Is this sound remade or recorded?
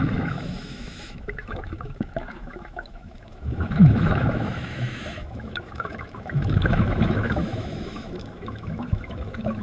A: remade